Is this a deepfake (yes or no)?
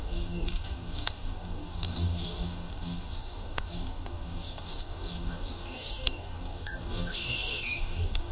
yes